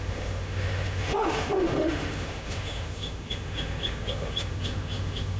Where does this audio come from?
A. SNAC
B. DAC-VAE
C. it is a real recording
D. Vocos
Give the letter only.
B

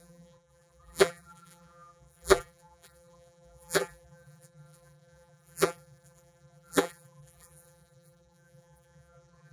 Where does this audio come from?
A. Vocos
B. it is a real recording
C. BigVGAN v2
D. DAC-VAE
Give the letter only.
C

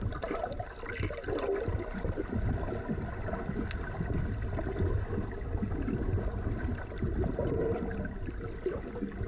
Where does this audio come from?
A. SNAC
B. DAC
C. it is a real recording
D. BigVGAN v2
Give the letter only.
C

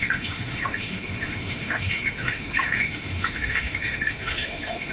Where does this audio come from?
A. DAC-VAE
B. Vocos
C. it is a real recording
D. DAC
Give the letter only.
A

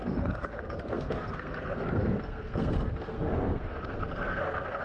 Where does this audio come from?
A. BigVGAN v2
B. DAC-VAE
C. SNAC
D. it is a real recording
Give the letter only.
C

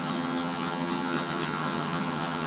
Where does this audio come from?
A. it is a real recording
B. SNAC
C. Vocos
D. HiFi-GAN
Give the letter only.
D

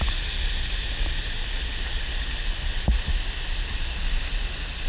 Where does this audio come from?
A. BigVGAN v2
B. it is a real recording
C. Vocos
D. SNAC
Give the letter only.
B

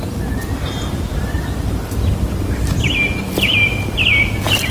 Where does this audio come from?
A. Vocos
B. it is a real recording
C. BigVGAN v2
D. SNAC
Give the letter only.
B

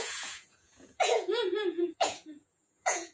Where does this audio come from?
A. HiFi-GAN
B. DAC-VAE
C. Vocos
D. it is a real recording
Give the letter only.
C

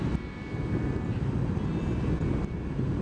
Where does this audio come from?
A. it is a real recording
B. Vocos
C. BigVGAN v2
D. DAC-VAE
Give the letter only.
A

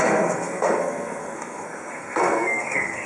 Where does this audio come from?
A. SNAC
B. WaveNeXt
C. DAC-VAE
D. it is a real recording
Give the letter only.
A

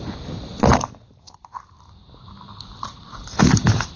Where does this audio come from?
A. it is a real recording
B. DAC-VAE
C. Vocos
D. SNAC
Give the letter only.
A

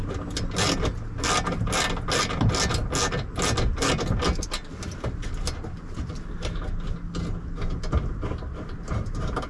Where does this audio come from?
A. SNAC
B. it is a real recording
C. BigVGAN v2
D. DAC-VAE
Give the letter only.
B